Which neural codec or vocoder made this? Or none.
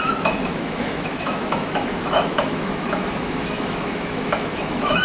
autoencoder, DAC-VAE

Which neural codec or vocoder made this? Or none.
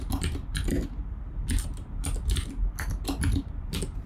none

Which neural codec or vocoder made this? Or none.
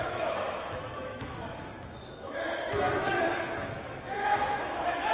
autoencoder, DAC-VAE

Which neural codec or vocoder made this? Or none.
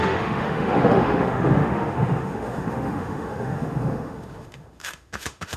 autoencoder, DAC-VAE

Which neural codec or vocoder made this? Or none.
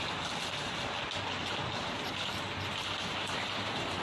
none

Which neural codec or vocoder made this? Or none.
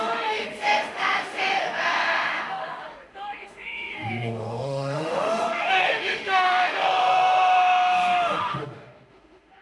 autoencoder, DAC-VAE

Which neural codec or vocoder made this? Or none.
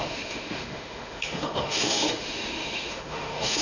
autoencoder, DAC-VAE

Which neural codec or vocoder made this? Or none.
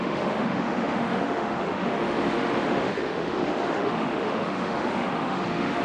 autoencoder, DAC-VAE